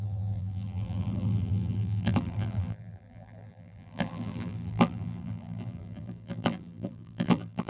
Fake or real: fake